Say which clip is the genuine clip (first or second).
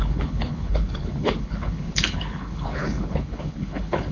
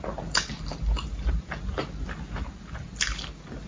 second